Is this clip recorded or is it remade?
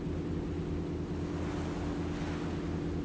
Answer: recorded